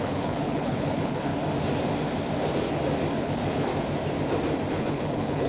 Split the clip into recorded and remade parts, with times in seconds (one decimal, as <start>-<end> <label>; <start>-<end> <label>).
0.0-1.3 remade; 1.3-3.2 recorded; 3.2-3.7 remade; 3.7-4.7 recorded; 4.7-5.5 remade